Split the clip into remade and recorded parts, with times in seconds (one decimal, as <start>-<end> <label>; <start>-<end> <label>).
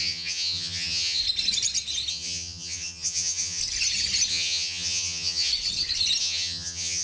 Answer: 0.0-1.2 remade; 1.2-2.1 recorded; 2.1-3.6 remade; 3.6-4.3 recorded; 4.3-5.5 remade; 5.5-6.2 recorded; 6.2-7.0 remade